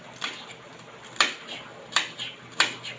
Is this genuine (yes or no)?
yes